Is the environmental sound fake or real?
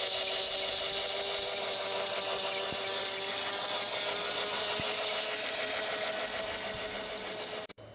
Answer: real